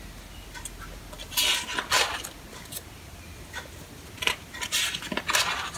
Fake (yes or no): no